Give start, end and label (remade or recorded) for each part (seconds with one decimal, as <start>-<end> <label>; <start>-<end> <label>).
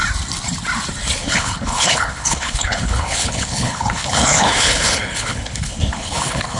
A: 0.0-1.2 recorded; 1.2-6.6 remade